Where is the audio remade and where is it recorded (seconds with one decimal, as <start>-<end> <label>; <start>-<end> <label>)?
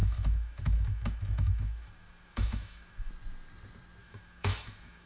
0.0-3.1 remade; 3.1-4.0 recorded; 4.0-5.1 remade